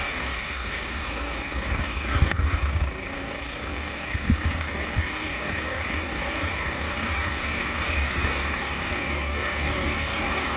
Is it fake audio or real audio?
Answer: fake